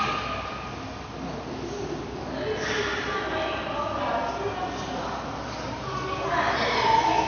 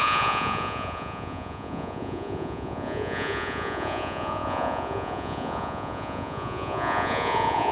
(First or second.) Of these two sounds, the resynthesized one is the second